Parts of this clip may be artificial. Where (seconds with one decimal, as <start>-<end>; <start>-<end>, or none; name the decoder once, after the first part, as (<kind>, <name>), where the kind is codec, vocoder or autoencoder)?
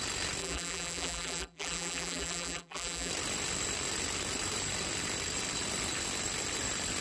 0.4-3.1 (vocoder, BigVGAN v2)